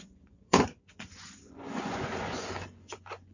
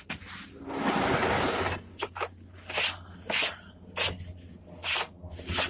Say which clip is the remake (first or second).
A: first